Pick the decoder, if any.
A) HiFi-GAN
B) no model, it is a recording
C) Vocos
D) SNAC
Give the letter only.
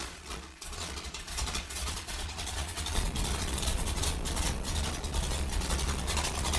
C